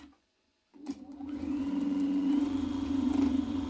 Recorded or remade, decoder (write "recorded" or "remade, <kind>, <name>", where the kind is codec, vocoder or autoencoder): remade, vocoder, Vocos